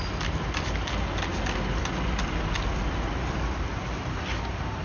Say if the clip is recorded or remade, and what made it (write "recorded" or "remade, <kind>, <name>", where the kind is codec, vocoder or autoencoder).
recorded